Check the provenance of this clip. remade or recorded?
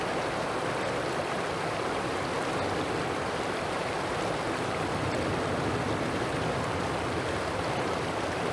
recorded